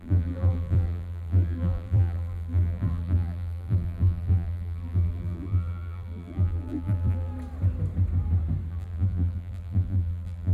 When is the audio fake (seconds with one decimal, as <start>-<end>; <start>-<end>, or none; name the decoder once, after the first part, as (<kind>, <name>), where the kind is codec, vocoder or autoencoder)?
0.0-7.3 (vocoder, BigVGAN v2); 8.7-10.5

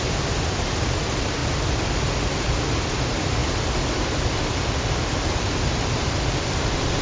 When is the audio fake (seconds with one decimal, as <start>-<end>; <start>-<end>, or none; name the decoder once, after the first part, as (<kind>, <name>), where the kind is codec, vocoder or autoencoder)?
none

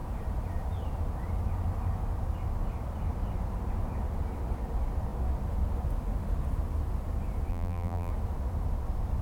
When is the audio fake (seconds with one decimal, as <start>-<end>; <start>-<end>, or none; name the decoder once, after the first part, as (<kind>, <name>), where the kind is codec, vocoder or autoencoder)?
7.5-8.1 (vocoder, BigVGAN v2)